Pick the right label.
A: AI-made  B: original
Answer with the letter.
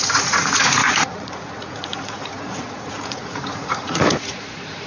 A